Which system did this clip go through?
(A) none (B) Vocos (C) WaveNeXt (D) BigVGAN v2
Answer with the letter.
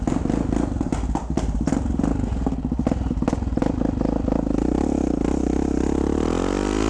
A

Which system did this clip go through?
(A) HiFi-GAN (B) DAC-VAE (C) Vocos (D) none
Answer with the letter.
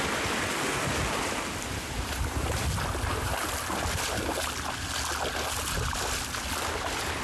D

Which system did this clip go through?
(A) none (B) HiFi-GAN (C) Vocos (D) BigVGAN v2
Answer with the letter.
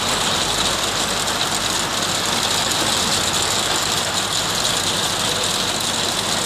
A